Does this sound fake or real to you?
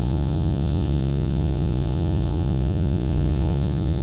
fake